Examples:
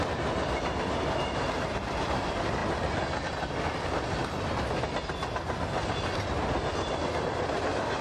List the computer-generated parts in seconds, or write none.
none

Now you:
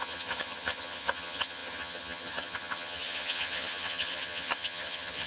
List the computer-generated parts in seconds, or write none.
0.0-5.3